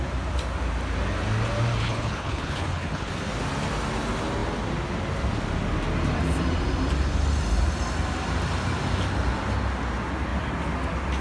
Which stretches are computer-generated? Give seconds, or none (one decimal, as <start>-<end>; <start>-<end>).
1.8-3.1